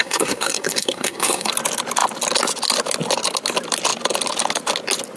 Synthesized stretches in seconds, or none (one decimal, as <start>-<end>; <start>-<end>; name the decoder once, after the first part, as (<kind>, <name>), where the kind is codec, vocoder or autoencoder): 0.0-1.5 (codec, SNAC)